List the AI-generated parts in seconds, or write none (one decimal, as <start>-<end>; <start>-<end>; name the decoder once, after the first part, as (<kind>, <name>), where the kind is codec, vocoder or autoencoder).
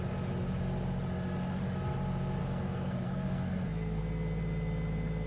2.4-4.0 (codec, SNAC)